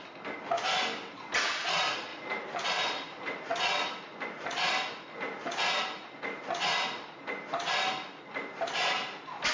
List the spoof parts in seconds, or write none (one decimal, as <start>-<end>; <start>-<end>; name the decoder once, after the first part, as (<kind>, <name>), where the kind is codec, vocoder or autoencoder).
2.1-3.6 (vocoder, BigVGAN v2)